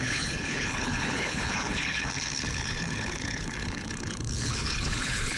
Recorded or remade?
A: remade